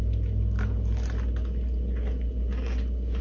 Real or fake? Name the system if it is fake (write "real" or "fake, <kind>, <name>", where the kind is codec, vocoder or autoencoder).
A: real